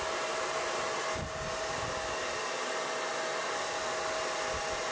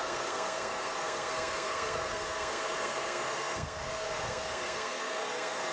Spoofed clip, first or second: second